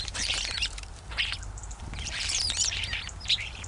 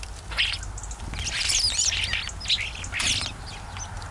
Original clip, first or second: second